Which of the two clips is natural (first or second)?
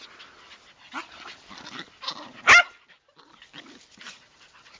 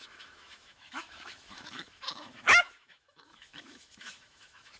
first